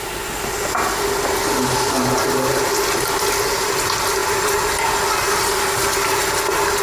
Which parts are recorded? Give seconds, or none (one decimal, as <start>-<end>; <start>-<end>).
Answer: 0.0-4.2; 5.0-6.8